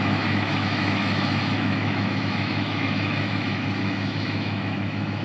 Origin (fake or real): fake